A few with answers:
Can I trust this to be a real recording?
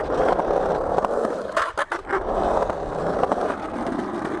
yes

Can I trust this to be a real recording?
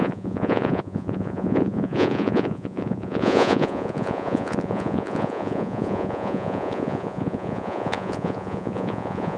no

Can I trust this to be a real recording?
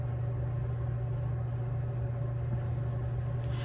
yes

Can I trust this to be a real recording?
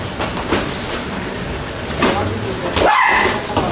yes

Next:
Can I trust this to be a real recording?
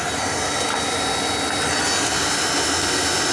yes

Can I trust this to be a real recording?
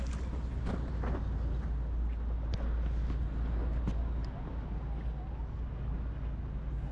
yes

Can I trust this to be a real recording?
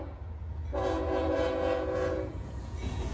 no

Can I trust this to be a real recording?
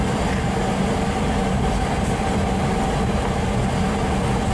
yes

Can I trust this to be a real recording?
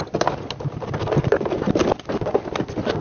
yes